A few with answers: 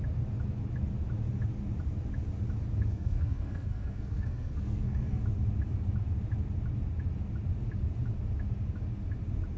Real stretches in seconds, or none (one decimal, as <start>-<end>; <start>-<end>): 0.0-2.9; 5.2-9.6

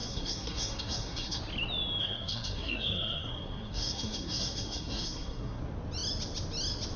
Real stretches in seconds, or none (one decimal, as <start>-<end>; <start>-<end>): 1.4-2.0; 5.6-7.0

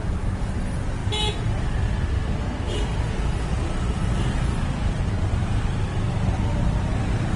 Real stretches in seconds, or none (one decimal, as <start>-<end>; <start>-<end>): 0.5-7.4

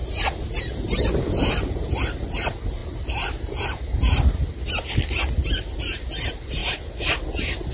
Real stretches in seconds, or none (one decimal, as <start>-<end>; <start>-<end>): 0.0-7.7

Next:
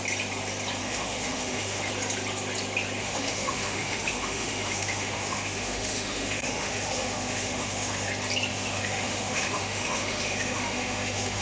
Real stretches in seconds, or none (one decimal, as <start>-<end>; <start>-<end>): 0.0-0.8; 1.9-3.0; 8.1-8.5

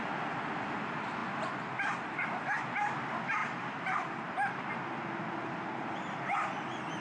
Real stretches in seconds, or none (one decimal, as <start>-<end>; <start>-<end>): 0.0-7.0